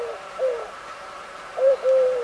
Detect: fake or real fake